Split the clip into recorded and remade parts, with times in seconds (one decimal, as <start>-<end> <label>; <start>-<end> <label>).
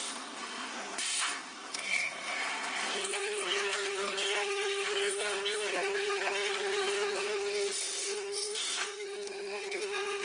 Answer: 0.0-10.2 remade